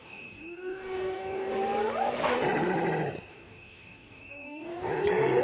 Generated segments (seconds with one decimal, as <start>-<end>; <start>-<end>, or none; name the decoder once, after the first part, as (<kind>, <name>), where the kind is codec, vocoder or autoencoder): 0.0-1.5 (codec, DAC); 3.3-4.9